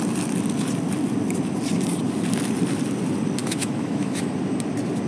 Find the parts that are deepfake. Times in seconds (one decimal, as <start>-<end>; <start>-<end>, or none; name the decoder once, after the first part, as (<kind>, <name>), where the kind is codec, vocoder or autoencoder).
3.4-4.3 (autoencoder, DAC-VAE)